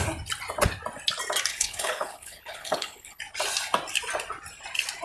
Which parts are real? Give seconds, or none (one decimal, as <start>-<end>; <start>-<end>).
0.0-1.5; 3.2-5.0